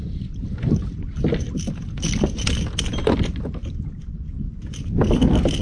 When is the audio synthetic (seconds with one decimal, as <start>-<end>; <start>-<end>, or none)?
0.0-4.3